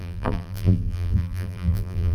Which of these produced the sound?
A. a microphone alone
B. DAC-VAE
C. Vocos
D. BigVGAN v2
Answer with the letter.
D